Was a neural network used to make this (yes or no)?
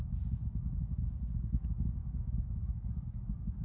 yes